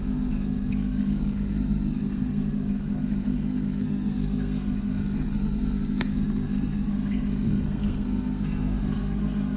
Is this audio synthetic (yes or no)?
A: yes